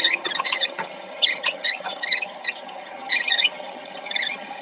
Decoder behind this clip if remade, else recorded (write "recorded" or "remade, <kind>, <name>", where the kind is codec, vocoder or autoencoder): remade, vocoder, HiFi-GAN